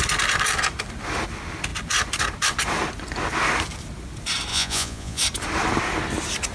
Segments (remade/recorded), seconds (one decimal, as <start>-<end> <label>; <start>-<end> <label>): 0.0-4.5 recorded; 4.5-5.2 remade; 5.2-6.5 recorded